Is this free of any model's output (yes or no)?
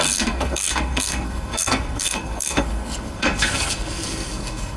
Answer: no